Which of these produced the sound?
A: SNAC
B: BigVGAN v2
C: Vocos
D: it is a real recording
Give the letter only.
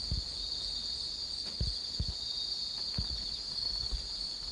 D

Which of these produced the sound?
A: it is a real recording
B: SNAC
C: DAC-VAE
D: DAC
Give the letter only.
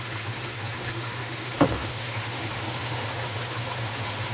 C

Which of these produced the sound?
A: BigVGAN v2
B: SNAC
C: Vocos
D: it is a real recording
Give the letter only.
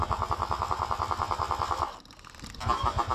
D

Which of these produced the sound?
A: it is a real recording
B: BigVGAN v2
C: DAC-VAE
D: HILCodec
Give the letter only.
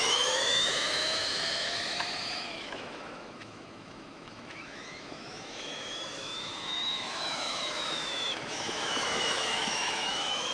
C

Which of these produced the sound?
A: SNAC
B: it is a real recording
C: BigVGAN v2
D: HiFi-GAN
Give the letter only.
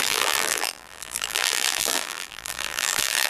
C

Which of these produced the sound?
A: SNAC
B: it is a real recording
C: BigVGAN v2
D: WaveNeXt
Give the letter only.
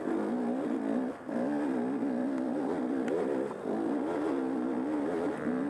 B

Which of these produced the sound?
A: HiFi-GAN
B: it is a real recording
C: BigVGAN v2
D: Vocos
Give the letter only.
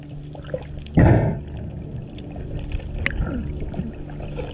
B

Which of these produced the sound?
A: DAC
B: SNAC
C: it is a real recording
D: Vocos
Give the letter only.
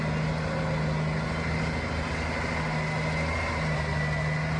C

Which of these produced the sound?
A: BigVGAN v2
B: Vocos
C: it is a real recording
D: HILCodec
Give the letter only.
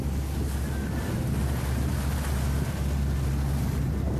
C